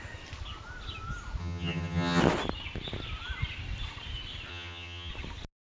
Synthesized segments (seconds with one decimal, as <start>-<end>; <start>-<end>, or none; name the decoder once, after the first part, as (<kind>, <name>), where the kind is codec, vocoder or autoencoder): 1.4-2.2 (vocoder, HiFi-GAN); 4.5-5.1